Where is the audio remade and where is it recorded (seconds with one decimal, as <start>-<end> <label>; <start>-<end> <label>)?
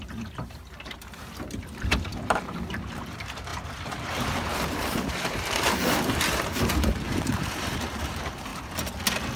0.0-8.5 remade; 8.5-9.4 recorded